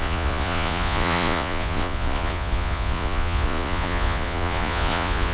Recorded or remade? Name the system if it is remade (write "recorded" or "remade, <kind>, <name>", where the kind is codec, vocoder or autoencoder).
remade, vocoder, Vocos